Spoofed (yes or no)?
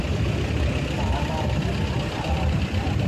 no